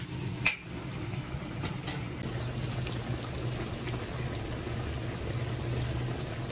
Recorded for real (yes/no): yes